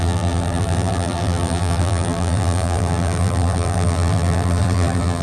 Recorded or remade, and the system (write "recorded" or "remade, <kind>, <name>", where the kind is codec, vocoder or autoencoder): remade, vocoder, BigVGAN v2